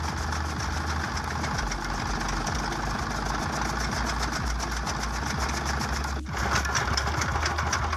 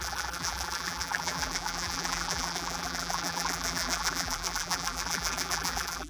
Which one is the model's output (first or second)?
second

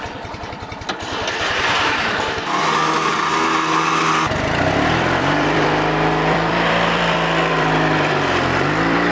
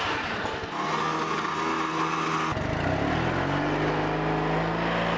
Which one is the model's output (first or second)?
first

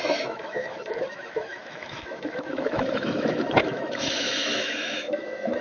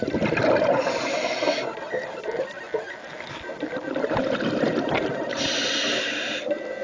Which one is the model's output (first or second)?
first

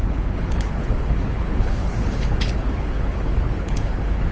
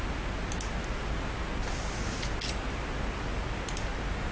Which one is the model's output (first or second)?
first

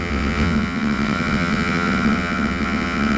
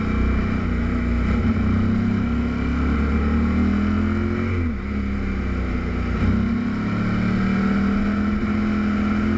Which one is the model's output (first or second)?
first